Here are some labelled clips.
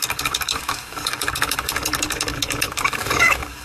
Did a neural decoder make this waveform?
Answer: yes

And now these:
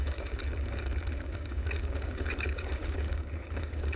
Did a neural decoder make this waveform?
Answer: yes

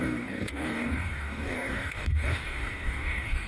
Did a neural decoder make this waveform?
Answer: yes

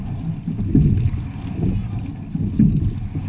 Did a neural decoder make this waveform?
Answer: no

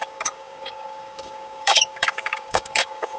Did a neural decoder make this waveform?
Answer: yes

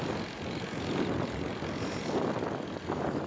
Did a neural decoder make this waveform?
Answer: no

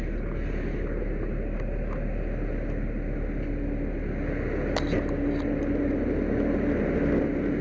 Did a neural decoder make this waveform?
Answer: no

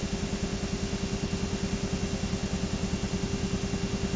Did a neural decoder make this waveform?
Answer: no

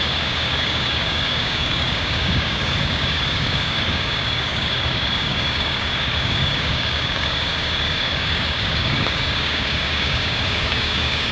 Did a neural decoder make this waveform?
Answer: yes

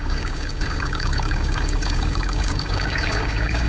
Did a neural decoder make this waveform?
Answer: yes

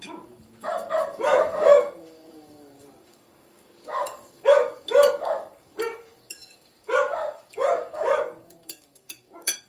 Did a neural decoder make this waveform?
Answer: yes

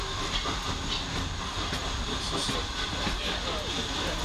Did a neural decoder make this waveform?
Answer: no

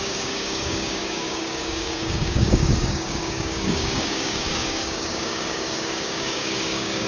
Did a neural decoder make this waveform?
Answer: yes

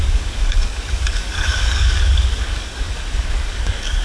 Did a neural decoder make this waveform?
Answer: yes